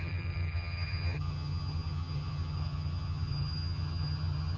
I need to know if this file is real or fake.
fake